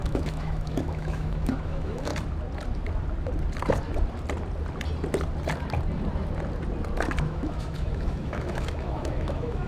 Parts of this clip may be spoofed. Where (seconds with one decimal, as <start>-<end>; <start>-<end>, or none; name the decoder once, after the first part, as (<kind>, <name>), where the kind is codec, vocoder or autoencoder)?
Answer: 0.0-2.1 (autoencoder, DAC-VAE); 7.2-9.7